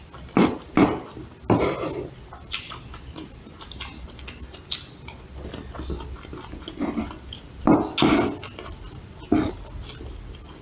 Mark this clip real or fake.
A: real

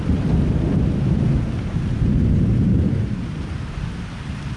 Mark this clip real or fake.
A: fake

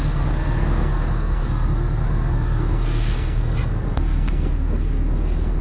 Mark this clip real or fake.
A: fake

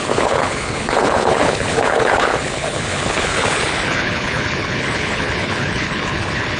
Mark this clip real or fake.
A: fake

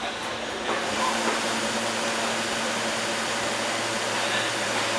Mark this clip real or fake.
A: real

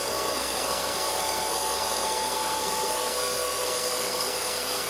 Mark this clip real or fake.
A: fake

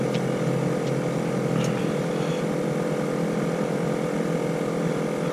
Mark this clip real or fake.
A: real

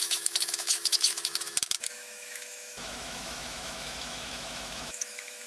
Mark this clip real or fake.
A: fake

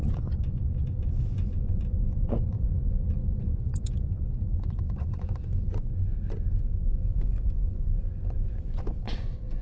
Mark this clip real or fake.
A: fake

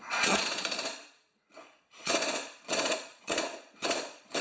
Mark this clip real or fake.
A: fake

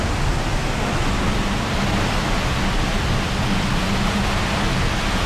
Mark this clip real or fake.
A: real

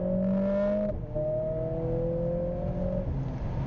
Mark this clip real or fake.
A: real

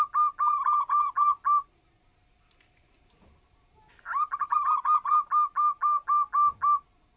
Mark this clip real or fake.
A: real